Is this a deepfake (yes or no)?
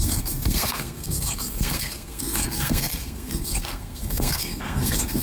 yes